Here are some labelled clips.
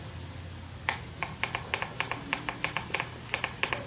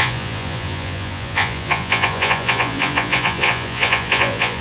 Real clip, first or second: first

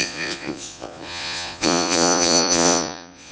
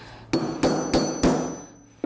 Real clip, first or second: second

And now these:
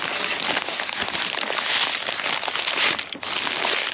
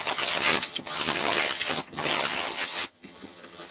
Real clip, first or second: first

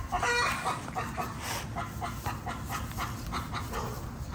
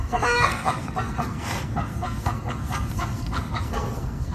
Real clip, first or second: first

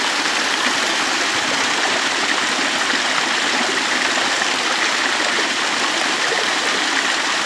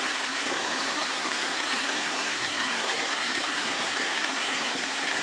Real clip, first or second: first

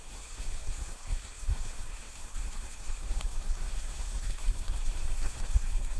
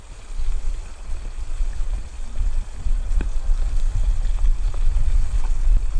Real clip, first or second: second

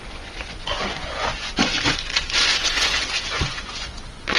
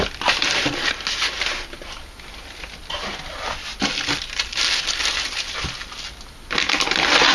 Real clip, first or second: second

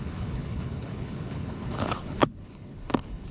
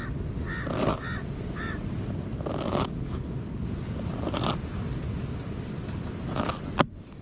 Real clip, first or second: second